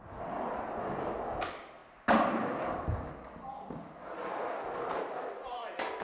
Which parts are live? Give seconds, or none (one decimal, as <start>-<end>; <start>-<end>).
0.0-6.0